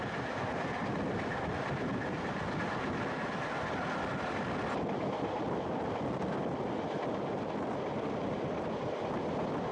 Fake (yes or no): no